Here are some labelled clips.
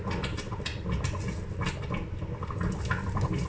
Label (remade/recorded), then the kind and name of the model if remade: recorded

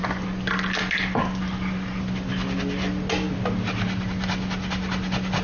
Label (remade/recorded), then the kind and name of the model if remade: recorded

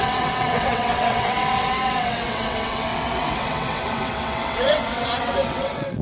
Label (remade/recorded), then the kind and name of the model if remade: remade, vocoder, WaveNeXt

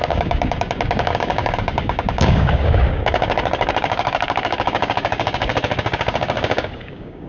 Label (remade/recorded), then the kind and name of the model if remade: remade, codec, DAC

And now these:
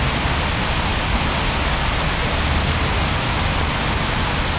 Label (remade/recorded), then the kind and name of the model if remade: recorded